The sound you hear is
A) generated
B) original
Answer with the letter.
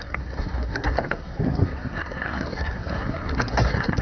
A